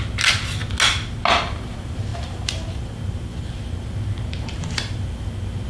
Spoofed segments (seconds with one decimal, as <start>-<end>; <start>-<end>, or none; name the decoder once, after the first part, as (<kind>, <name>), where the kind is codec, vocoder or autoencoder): 0.0-0.6 (vocoder, BigVGAN v2); 1.3-5.7